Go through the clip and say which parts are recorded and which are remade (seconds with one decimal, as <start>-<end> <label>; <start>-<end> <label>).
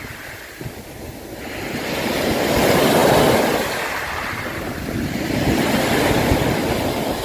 0.0-7.2 recorded